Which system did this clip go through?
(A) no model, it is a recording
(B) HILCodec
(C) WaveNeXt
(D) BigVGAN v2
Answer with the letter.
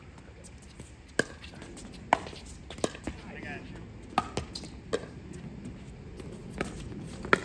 A